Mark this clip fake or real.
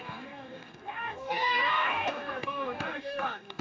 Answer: fake